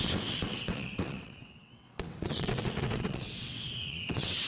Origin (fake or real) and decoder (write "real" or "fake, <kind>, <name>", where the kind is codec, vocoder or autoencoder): fake, vocoder, WaveNeXt